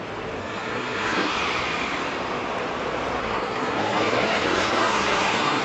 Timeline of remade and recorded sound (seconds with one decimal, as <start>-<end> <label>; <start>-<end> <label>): 0.0-0.4 recorded; 0.4-1.3 remade; 1.3-3.2 recorded; 3.2-5.6 remade